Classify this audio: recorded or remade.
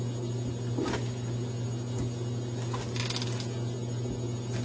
recorded